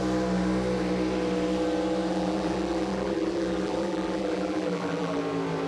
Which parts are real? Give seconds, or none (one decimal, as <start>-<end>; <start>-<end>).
0.0-2.1; 5.2-5.7